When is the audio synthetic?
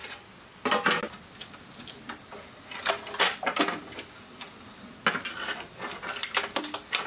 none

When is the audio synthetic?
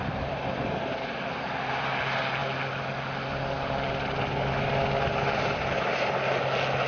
none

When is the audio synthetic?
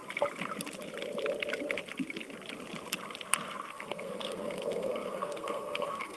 3.7-6.2 (codec, SNAC)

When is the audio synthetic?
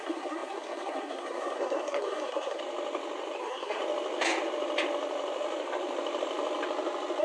0.0-2.6 (codec, SNAC); 3.4-3.8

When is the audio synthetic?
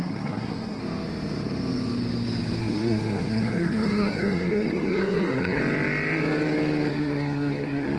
0.0-0.8 (codec, SNAC); 2.6-5.6; 6.9-8.0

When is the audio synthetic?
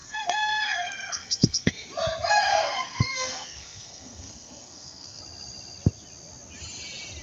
0.0-1.7 (codec, SNAC); 2.5-5.2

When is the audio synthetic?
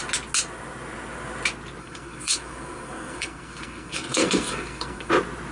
1.8-5.1 (codec, SNAC)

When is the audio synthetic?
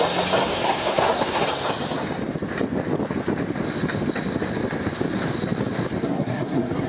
0.5-1.4 (codec, SNAC); 6.0-6.9